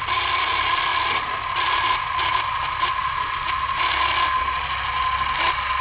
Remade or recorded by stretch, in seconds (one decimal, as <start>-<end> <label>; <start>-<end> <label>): 0.0-5.8 recorded